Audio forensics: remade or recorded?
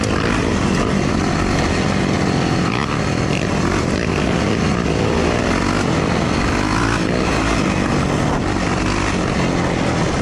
recorded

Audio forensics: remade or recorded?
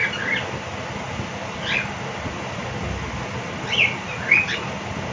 recorded